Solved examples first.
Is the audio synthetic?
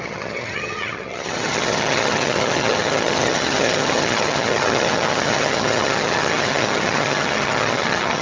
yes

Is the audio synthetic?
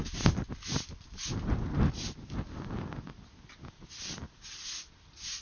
no